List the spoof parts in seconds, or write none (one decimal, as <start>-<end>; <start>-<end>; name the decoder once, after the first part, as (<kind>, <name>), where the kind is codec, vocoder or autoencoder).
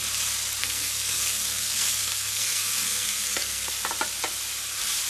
0.6-3.7 (codec, SNAC)